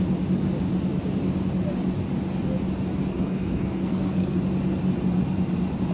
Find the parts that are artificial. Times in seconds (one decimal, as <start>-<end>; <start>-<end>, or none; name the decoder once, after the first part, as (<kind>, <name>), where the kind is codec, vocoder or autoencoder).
3.1-4.4 (codec, SNAC)